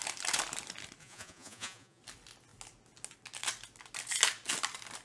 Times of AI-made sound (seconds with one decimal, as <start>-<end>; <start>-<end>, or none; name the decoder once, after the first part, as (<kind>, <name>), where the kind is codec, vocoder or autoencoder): 1.0-2.0 (vocoder, Vocos)